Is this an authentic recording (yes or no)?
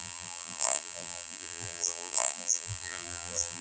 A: no